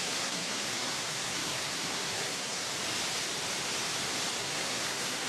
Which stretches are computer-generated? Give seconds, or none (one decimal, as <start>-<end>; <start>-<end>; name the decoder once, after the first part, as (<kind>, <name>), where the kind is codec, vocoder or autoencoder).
0.0-2.7 (codec, SNAC); 4.4-5.3